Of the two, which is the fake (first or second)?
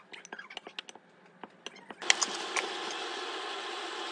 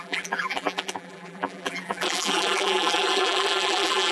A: second